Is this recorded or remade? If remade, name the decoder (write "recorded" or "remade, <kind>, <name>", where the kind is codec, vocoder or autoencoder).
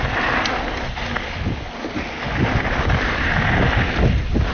recorded